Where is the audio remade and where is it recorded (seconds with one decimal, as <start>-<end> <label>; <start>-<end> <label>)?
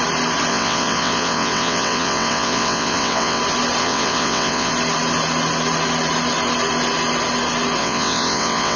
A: 0.0-0.5 recorded; 0.5-3.4 remade; 3.4-3.8 recorded; 3.8-4.7 remade; 4.7-7.8 recorded; 7.8-8.8 remade